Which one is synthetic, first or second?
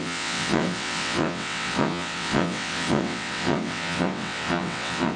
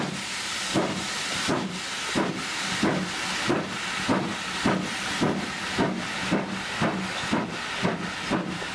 first